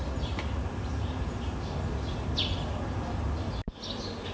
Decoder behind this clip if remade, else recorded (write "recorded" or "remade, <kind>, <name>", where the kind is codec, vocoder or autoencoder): recorded